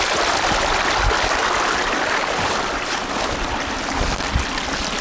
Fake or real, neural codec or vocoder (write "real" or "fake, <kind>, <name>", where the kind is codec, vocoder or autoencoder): real